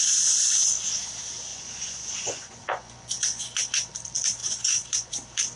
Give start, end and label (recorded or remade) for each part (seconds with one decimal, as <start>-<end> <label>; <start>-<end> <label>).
0.0-1.5 recorded; 1.5-3.9 remade; 3.9-4.4 recorded; 4.4-5.1 remade; 5.1-5.6 recorded